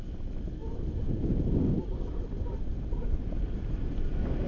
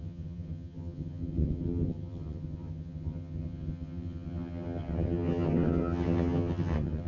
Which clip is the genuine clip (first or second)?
first